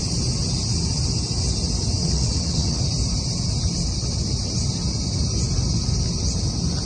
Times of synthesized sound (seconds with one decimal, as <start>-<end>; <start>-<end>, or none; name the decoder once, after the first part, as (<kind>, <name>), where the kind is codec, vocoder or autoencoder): 2.0-2.8 (vocoder, WaveNeXt)